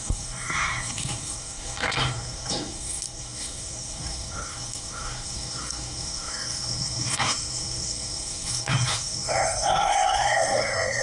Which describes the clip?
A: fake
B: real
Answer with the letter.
A